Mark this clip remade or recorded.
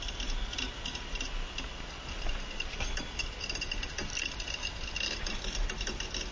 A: recorded